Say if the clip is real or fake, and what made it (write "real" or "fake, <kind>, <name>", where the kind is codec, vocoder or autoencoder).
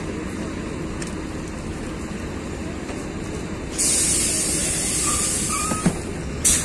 real